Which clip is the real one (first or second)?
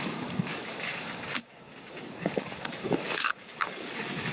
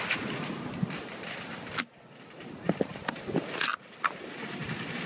second